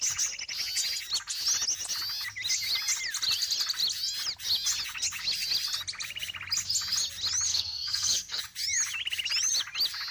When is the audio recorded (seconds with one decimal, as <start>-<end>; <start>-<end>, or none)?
0.0-7.5; 8.4-10.1